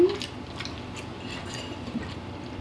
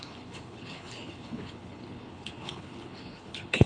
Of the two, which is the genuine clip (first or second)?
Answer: first